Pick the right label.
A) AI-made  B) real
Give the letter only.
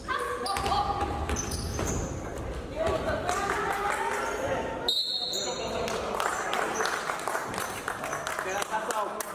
B